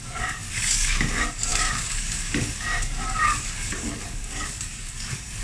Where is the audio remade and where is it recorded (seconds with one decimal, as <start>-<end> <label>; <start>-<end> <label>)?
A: 0.0-5.4 remade